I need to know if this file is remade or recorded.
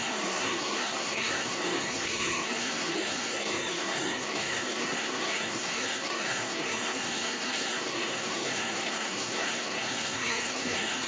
remade